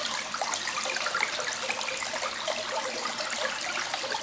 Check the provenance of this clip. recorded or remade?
recorded